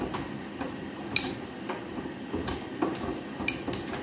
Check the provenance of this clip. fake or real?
fake